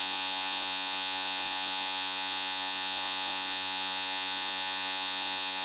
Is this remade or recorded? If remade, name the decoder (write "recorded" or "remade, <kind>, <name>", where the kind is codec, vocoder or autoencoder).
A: remade, vocoder, Vocos